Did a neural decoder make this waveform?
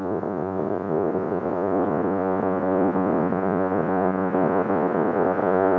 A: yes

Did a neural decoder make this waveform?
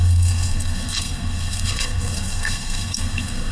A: yes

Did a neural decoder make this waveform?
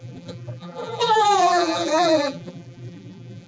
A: yes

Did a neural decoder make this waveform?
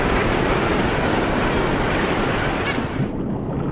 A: no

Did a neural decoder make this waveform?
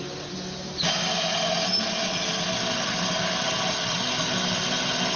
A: no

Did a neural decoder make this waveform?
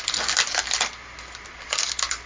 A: no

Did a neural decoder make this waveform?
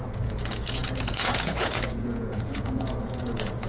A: yes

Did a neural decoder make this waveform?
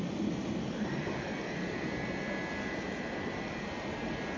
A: no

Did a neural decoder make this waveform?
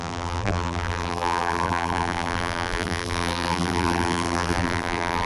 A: yes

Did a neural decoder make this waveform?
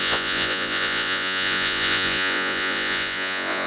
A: yes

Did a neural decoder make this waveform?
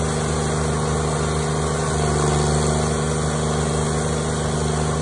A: no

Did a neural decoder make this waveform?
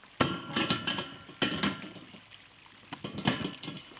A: no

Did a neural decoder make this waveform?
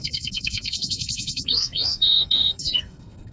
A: yes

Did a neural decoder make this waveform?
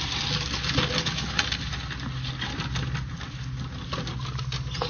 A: no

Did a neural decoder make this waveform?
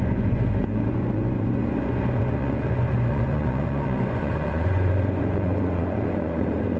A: yes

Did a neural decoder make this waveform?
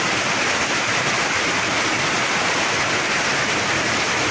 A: yes